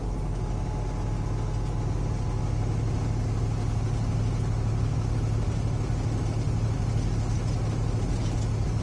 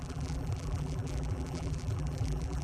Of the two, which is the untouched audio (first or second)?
first